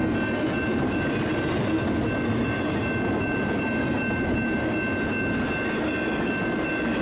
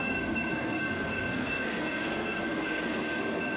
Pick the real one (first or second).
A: first